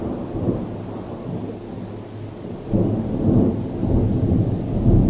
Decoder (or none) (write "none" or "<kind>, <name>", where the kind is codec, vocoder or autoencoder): none